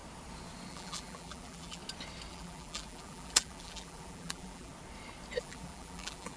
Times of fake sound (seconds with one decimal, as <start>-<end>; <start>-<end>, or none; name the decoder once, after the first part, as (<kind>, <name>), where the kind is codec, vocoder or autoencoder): 0.7-1.8 (vocoder, BigVGAN v2); 2.3-4.7; 5.4-6.4

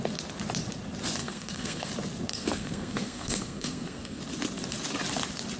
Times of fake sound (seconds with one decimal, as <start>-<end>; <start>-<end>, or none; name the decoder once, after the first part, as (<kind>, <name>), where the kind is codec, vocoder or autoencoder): 1.2-1.9 (codec, SNAC); 2.3-4.2

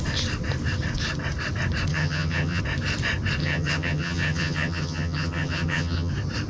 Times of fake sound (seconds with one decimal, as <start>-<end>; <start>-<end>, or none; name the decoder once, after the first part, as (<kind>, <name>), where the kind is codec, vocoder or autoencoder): 1.9-2.6 (vocoder, HiFi-GAN); 3.4-6.1

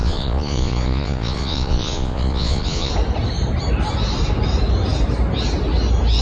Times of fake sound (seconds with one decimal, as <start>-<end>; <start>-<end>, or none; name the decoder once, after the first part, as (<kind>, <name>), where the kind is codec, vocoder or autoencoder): 0.0-2.9 (vocoder, Vocos)